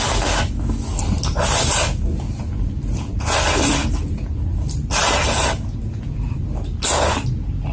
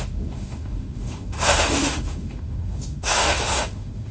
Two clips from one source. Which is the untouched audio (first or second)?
first